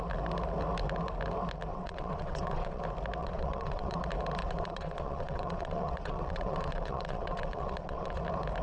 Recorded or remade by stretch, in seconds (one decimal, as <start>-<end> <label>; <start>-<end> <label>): 0.0-1.7 recorded; 1.7-2.8 remade; 2.8-3.2 recorded; 3.2-4.0 remade; 4.0-4.4 recorded; 4.4-8.2 remade; 8.2-8.6 recorded